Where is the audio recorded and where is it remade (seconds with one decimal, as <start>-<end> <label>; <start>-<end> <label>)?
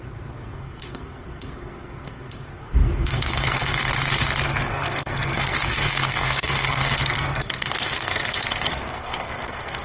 0.0-3.8 remade; 3.8-4.7 recorded; 4.7-9.8 remade